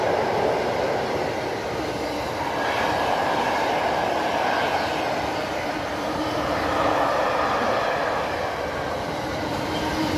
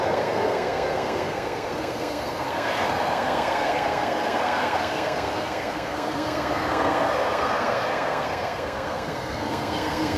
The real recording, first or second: first